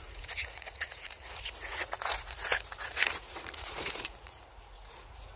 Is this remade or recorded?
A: remade